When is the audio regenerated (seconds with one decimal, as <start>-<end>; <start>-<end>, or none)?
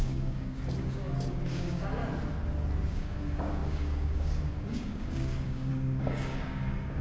0.0-2.0; 2.9-7.0